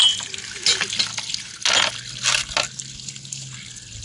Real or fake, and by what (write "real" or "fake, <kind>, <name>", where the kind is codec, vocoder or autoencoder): real